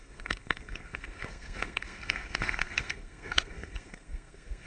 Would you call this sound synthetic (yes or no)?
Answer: yes